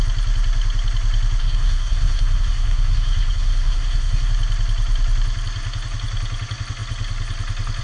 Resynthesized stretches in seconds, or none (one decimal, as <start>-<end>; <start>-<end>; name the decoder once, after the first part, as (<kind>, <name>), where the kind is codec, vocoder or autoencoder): 1.4-4.3 (codec, SNAC)